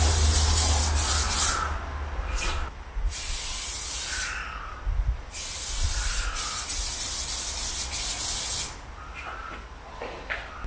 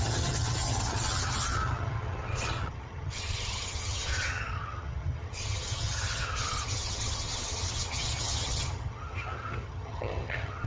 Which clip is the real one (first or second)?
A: first